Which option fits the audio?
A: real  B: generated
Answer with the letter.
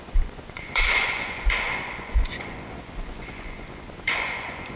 B